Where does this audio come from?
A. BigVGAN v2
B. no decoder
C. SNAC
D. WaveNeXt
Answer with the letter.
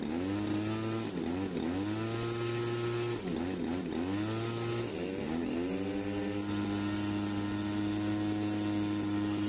B